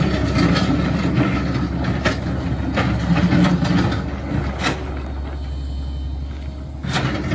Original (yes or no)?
yes